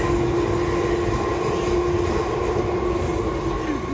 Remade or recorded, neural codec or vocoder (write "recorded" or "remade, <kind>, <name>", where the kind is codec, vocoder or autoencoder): recorded